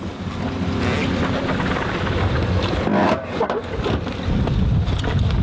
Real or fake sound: real